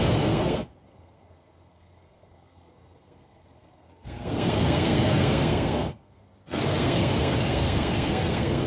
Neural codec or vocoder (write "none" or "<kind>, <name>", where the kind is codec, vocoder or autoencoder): codec, SNAC